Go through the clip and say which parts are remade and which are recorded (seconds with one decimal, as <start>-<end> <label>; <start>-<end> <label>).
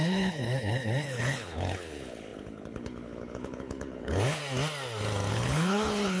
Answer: 0.0-4.4 remade; 4.4-5.3 recorded; 5.3-6.2 remade